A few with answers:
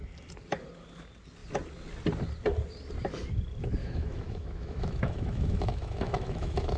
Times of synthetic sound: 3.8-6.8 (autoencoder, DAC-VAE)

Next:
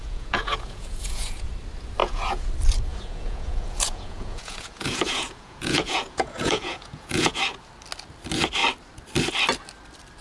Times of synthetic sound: 0.0-1.5 (vocoder, Vocos); 2.0-2.5; 2.9-7.4

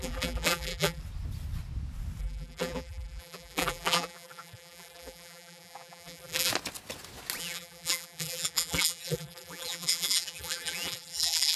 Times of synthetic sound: 0.0-1.0 (vocoder, BigVGAN v2); 2.2-6.5; 7.4-11.6